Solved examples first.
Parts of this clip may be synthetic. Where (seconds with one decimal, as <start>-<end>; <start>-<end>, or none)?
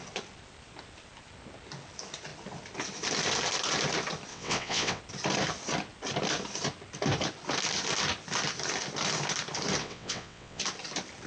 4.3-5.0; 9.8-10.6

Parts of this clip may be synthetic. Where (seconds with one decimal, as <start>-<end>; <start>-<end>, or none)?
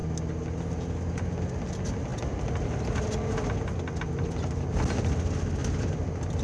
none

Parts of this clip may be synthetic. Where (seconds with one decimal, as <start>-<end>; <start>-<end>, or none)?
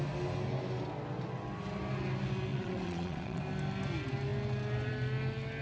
2.5-3.4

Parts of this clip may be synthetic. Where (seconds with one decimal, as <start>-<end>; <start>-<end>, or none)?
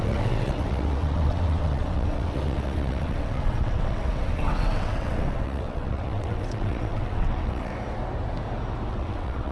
0.0-7.7; 8.9-9.5